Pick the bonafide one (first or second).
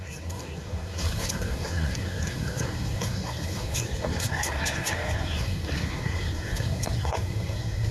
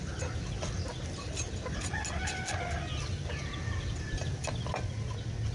second